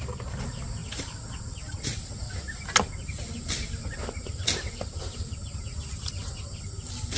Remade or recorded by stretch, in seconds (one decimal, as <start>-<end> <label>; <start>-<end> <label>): 0.0-7.2 recorded